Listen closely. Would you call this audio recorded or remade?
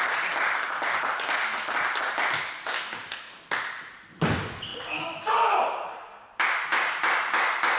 recorded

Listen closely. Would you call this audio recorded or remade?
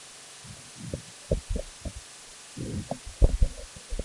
recorded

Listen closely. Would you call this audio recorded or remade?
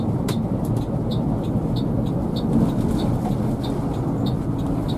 recorded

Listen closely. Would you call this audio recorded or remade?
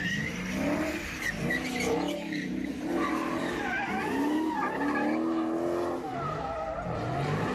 recorded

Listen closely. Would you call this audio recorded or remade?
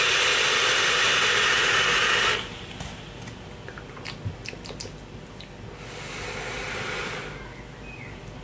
recorded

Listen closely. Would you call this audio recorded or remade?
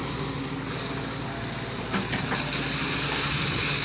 recorded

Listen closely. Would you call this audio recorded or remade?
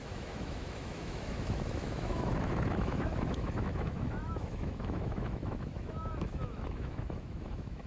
remade